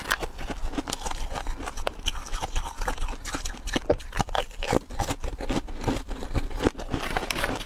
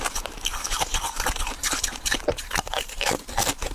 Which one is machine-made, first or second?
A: second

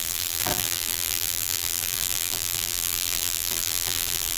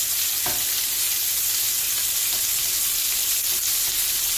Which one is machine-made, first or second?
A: first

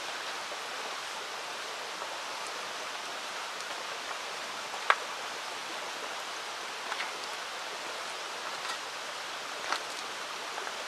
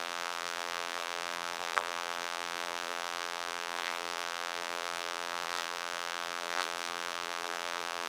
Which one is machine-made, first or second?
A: second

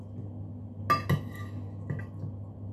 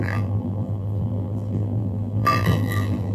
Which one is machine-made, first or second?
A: second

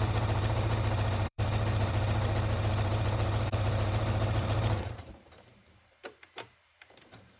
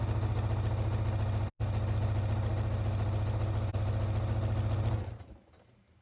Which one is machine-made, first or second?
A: first